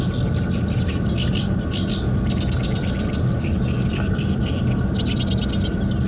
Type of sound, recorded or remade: recorded